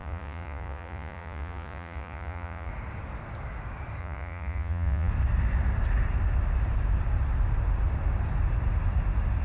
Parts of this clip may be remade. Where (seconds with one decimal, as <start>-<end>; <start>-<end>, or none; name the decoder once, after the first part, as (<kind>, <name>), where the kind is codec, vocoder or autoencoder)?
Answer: 0.0-2.7 (vocoder, Vocos); 4.0-5.1